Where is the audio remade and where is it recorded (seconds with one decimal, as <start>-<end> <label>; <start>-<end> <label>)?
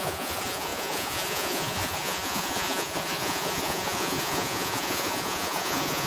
0.0-6.1 remade